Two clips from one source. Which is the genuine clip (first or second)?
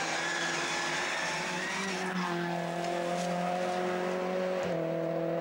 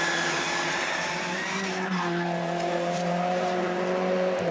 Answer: first